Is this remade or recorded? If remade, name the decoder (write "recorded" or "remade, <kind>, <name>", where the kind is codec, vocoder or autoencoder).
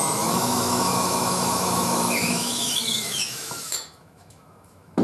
remade, autoencoder, DAC-VAE